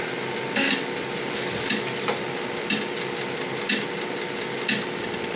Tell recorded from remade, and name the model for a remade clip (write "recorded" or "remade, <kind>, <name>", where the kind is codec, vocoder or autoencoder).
recorded